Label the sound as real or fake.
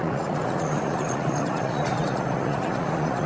fake